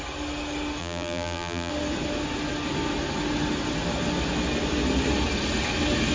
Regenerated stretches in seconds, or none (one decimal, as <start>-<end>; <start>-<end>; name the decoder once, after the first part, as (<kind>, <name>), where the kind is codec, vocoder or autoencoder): 0.8-1.7 (vocoder, BigVGAN v2)